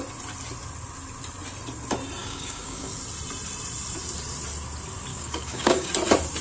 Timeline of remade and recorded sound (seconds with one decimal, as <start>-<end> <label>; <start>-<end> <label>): 0.0-2.2 recorded; 2.2-2.9 remade; 2.9-5.1 recorded; 5.1-5.9 remade; 5.9-6.4 recorded